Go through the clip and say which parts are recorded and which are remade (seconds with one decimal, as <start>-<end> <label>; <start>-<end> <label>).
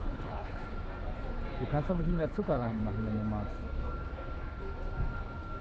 0.0-0.6 remade; 0.6-1.9 recorded; 1.9-2.8 remade; 2.8-5.6 recorded